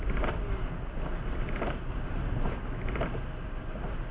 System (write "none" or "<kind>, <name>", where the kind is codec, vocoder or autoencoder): none